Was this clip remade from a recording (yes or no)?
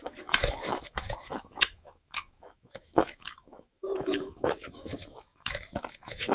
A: yes